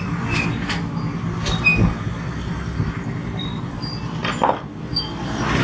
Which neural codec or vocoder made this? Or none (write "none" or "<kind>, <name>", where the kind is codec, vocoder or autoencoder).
none